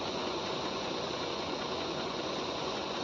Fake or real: fake